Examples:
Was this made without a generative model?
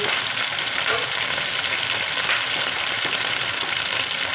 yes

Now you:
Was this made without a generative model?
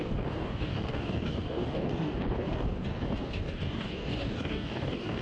no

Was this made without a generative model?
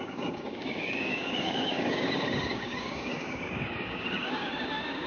no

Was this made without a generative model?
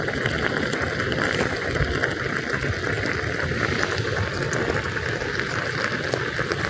yes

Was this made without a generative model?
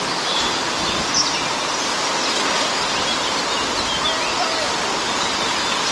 yes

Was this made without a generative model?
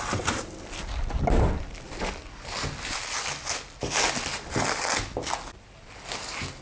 yes